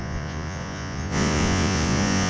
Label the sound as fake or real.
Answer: fake